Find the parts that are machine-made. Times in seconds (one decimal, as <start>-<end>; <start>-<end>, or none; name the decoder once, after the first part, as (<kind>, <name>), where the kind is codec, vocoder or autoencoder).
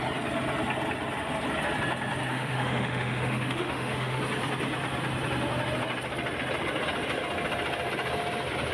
2.3-4.2 (autoencoder, DAC-VAE)